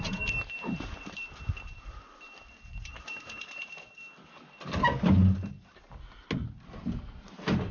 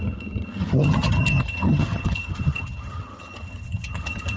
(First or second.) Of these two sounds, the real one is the first